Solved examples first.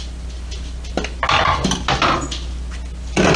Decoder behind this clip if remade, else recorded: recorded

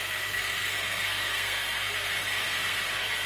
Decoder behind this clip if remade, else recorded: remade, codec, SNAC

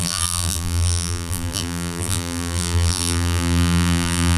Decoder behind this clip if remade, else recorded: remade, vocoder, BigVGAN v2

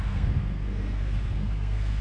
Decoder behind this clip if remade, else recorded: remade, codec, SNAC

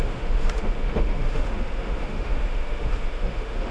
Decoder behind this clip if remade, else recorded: remade, autoencoder, DAC-VAE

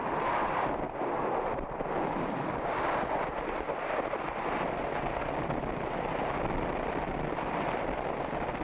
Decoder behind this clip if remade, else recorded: recorded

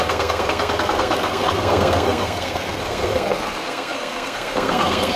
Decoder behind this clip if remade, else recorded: remade, codec, SNAC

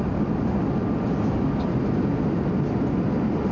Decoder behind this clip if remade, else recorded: recorded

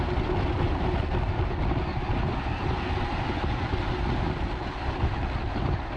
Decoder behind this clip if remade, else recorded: recorded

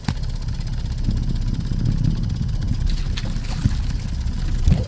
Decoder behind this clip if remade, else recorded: recorded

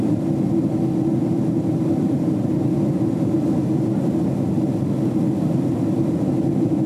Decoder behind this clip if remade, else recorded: recorded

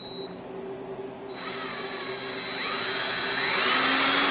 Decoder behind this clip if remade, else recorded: recorded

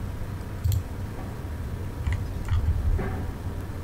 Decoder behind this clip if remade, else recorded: recorded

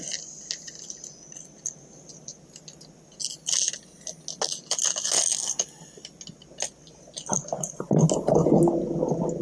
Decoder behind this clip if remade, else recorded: recorded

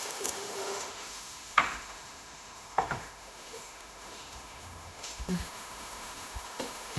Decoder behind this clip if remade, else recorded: remade, autoencoder, DAC-VAE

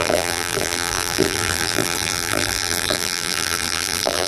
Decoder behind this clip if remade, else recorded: remade, vocoder, BigVGAN v2